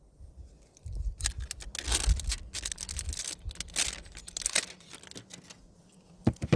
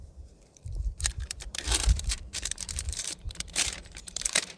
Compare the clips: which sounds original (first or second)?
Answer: first